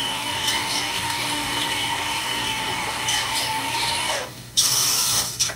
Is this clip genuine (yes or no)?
no